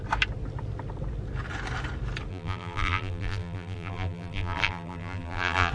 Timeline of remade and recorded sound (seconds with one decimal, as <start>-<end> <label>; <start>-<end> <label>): 0.0-2.3 recorded; 2.3-5.7 remade